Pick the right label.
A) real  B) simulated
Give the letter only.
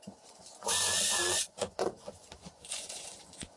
B